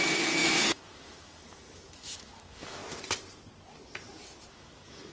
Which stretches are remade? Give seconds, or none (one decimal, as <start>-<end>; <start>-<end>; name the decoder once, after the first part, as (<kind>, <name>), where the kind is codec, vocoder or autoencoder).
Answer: 0.0-2.8 (autoencoder, DAC-VAE); 4.5-5.1